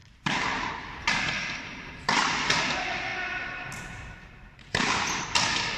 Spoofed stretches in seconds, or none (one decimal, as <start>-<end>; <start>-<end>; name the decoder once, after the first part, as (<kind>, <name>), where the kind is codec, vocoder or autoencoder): 0.0-2.2 (vocoder, BigVGAN v2); 2.7-5.8